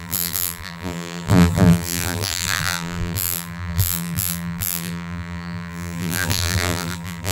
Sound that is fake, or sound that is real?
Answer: fake